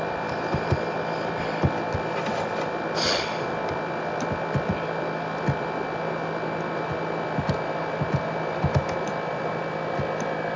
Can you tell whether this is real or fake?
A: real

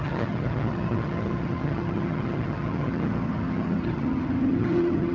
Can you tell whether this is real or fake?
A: fake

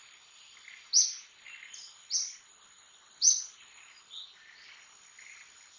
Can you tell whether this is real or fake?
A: real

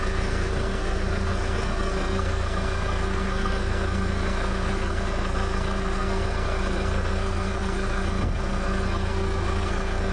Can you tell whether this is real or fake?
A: fake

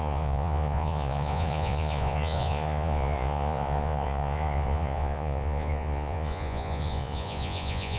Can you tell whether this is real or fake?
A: fake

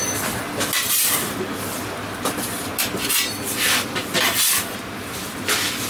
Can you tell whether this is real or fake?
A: real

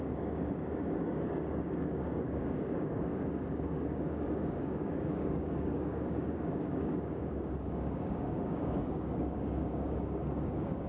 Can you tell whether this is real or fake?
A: fake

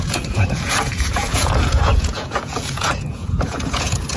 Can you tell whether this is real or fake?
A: fake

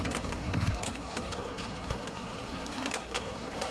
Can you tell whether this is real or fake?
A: fake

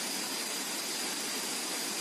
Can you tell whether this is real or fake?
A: real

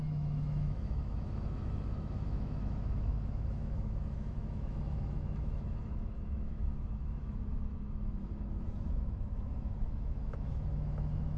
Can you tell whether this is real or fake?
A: fake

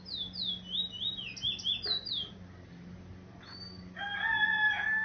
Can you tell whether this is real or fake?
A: real